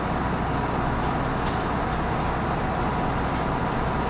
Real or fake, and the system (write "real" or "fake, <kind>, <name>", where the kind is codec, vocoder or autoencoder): real